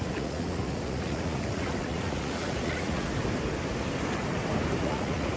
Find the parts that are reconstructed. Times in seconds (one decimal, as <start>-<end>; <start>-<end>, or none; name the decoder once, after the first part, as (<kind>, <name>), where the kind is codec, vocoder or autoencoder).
0.0-3.1 (vocoder, Vocos); 4.8-5.4